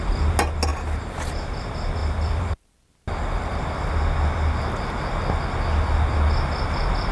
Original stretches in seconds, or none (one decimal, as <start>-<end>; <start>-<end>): 0.0-2.0; 2.8-7.1